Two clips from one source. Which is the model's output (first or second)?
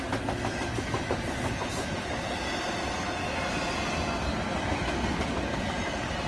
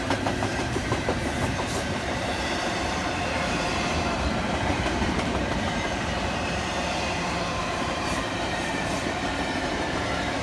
second